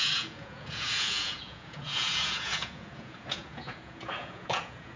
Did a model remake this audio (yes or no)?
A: yes